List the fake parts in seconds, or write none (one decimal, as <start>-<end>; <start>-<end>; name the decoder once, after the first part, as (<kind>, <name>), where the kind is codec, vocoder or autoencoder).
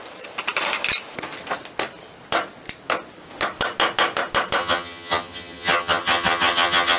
4.6-7.0 (vocoder, HiFi-GAN)